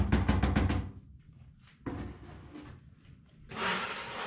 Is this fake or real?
real